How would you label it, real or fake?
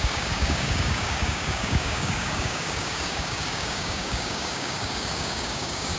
fake